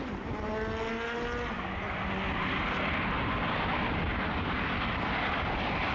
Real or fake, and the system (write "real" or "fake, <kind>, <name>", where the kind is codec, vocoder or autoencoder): real